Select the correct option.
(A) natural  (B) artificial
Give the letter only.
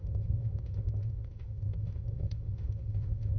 B